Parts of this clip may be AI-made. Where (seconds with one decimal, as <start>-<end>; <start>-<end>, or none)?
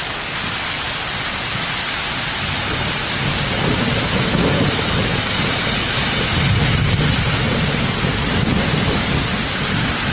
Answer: 0.0-1.5; 5.1-9.6